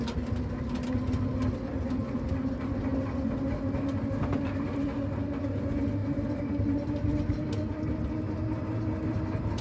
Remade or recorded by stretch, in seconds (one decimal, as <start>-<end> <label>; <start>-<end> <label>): 0.0-6.0 recorded; 6.0-6.9 remade; 6.9-9.6 recorded